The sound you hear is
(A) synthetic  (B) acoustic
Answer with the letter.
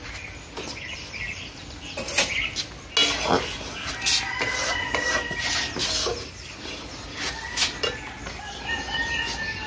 B